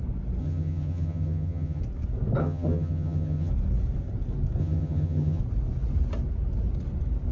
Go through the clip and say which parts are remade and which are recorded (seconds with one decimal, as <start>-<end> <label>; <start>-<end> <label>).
0.0-0.4 recorded; 0.4-1.8 remade; 1.8-2.4 recorded; 2.4-3.5 remade; 3.5-4.6 recorded; 4.6-5.4 remade; 5.4-7.3 recorded